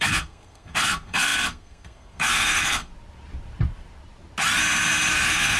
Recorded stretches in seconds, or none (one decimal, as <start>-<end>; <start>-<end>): 2.9-5.1